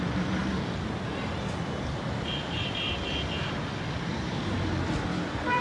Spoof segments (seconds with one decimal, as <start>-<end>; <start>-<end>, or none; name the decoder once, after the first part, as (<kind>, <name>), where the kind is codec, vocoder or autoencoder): 0.0-0.4 (vocoder, BigVGAN v2); 1.8-5.6